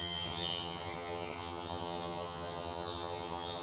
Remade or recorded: remade